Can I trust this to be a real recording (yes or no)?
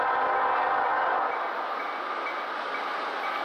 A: yes